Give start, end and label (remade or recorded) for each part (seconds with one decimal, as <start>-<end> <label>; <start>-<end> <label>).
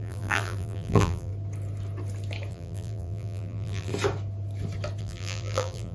0.0-1.3 remade; 1.3-2.5 recorded; 2.5-3.9 remade; 3.9-5.0 recorded; 5.0-5.9 remade